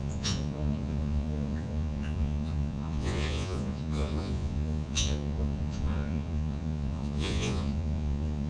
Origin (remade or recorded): remade